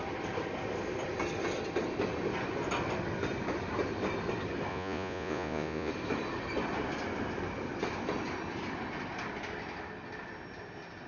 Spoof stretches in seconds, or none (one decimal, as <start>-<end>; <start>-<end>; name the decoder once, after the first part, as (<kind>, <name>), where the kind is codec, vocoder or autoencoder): 4.7-5.9 (vocoder, Vocos)